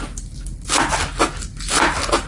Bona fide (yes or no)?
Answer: yes